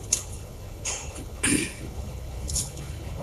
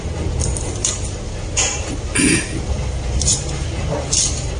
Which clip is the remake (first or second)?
first